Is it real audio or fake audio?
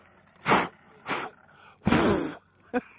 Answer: real